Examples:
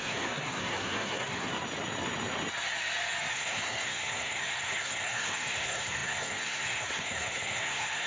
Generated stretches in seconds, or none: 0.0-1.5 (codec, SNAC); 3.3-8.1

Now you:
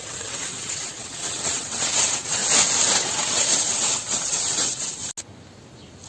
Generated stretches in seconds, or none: 0.0-2.4 (vocoder, WaveNeXt); 3.0-5.0